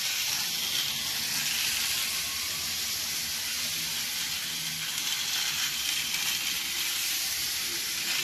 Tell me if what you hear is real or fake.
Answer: real